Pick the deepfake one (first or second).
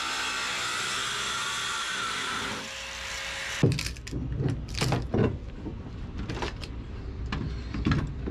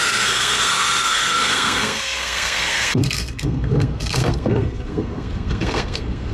second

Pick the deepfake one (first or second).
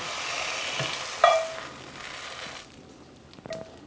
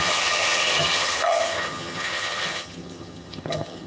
second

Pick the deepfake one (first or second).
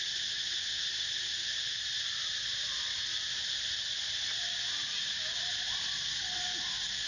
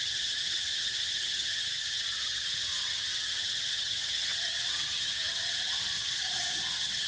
second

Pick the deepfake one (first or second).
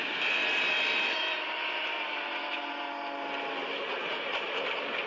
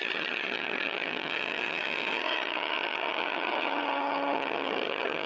second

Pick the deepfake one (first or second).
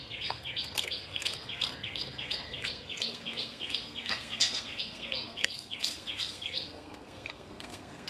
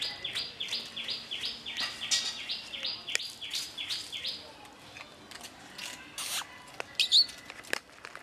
first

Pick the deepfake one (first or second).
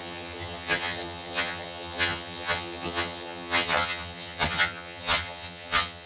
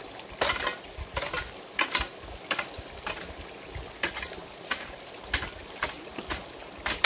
first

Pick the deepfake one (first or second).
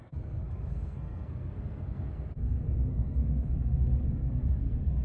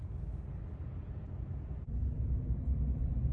first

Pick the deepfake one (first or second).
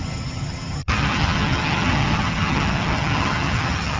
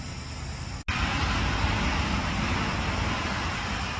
first